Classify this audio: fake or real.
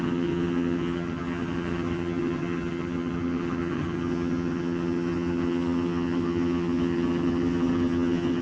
fake